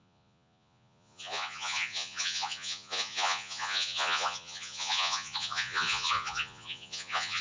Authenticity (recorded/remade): remade